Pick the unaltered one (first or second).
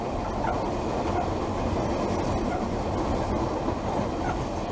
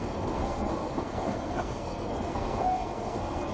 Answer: first